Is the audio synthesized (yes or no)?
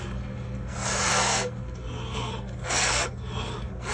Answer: yes